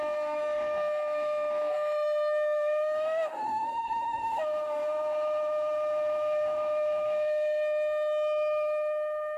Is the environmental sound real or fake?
fake